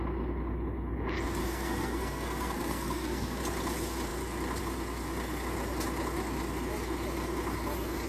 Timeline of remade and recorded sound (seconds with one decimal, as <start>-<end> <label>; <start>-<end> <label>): 0.0-1.4 recorded; 1.4-3.4 remade; 3.4-8.1 recorded